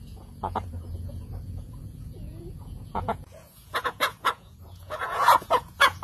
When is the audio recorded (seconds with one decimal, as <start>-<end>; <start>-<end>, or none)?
none